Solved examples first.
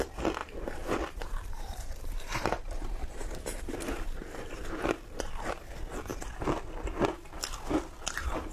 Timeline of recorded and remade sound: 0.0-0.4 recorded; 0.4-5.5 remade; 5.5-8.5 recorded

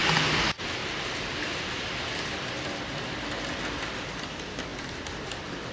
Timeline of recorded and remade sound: 0.0-0.8 remade; 0.8-4.2 recorded; 4.2-5.7 remade

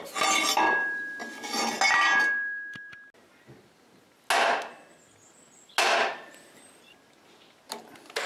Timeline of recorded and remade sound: 0.0-8.3 recorded